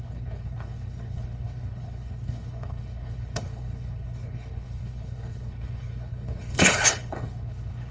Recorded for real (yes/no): no